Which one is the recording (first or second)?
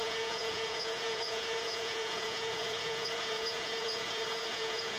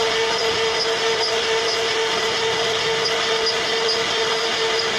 second